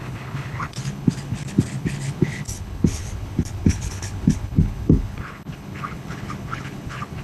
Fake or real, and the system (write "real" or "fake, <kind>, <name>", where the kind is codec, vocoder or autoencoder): fake, codec, HILCodec